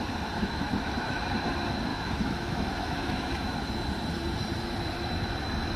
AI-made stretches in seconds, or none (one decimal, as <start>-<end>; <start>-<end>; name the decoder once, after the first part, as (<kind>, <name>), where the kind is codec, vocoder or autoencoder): 0.4-1.2 (autoencoder, DAC-VAE); 1.9-3.5